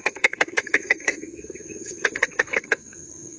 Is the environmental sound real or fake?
fake